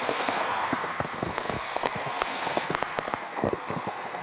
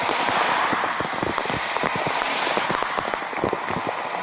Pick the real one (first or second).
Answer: second